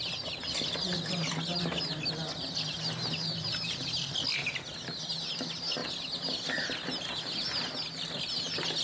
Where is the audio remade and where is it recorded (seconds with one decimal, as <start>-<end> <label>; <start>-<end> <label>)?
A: 0.0-8.8 recorded